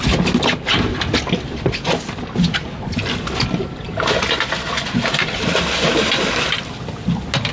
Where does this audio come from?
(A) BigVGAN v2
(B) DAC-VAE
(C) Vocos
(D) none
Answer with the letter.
D